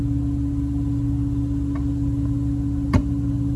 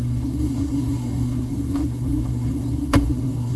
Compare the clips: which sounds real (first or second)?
first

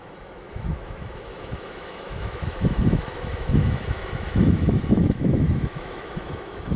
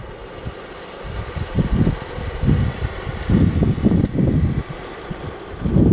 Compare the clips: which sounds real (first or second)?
second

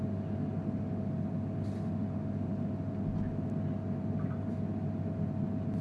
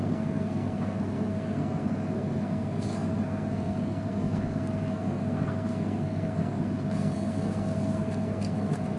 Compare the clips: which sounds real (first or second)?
first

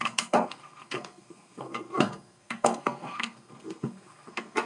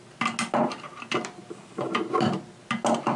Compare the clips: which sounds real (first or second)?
second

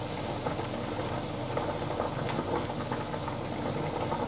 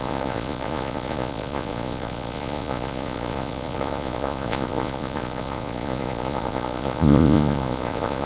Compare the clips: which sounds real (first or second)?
first